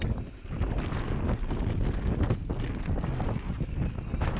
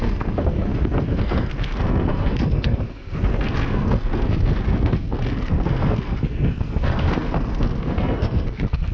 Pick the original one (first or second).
first